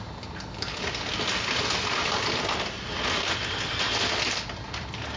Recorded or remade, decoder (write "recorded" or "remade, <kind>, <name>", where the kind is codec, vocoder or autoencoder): recorded